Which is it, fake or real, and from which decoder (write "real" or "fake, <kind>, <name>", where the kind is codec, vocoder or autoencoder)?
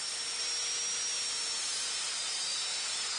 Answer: real